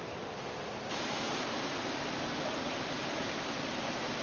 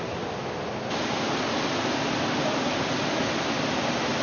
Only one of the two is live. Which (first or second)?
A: second